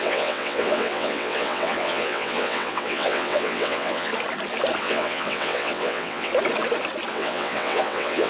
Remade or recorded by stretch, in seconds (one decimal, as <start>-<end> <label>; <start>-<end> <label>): 0.0-4.1 remade; 4.1-4.8 recorded; 4.8-6.3 remade; 6.3-7.1 recorded; 7.1-8.3 remade